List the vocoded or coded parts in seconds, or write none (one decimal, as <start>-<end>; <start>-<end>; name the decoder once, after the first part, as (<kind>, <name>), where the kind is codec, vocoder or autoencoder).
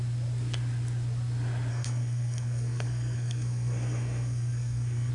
1.7-5.1 (codec, SNAC)